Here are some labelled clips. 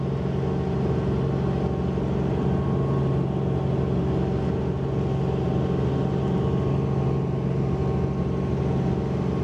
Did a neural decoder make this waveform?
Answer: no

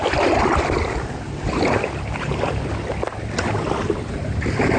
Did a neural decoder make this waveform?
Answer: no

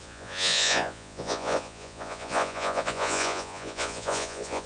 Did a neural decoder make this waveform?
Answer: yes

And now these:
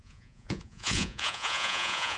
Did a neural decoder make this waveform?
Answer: yes